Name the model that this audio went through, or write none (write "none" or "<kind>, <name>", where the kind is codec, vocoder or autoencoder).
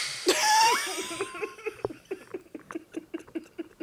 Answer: none